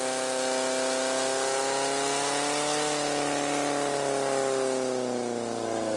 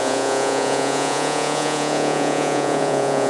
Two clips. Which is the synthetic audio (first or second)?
second